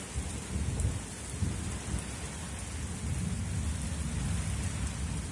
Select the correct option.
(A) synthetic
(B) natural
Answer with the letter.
B